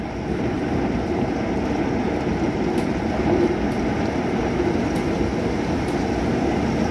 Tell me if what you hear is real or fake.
real